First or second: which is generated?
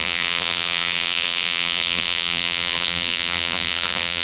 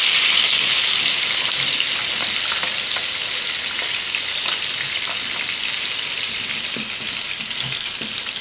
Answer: first